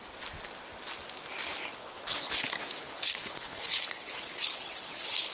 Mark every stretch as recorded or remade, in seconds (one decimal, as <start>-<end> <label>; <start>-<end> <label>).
0.0-1.8 recorded; 1.8-2.4 remade; 2.4-2.8 recorded; 2.8-5.3 remade